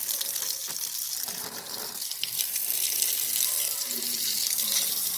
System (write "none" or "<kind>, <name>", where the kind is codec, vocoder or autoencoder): none